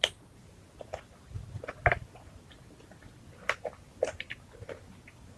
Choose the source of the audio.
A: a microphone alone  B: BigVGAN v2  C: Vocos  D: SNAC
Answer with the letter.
A